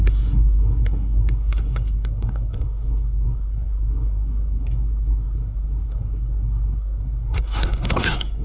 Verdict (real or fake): fake